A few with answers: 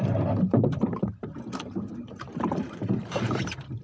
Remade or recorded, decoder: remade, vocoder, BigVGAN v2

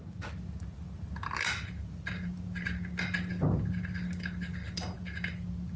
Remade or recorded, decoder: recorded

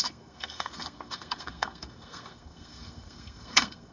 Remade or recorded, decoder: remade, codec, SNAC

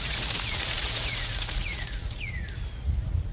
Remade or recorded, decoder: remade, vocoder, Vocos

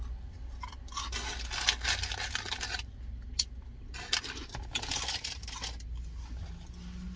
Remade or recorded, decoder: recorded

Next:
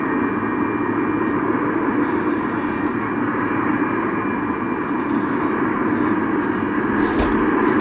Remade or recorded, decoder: recorded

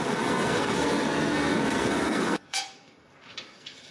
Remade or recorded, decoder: remade, codec, SNAC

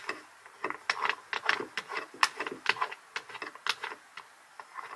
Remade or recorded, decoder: recorded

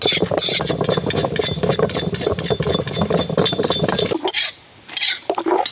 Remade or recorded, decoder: recorded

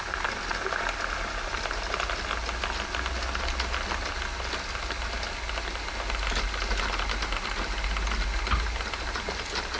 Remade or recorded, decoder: recorded